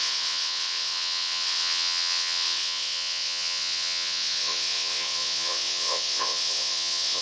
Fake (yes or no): yes